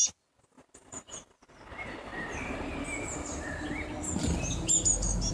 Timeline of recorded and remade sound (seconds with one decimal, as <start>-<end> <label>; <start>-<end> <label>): 0.0-5.3 recorded